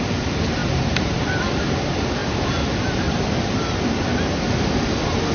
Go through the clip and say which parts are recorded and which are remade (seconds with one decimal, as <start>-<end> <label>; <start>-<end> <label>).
0.0-5.3 recorded